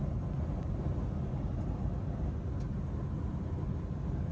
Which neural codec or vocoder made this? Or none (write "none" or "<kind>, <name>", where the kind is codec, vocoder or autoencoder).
none